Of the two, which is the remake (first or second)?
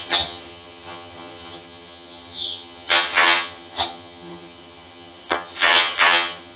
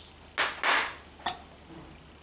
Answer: first